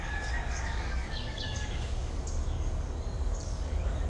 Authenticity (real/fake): fake